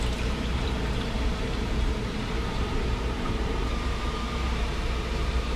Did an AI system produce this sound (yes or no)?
yes